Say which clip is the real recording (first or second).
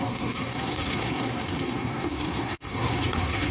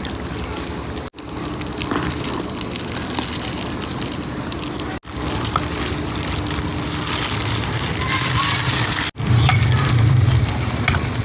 second